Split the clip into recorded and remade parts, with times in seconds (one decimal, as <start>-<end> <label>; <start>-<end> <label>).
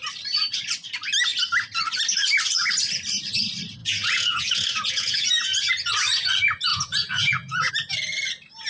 0.0-3.8 recorded; 3.8-5.7 remade; 5.7-6.7 recorded; 6.7-7.7 remade; 7.7-8.7 recorded